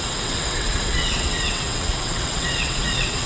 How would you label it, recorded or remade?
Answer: remade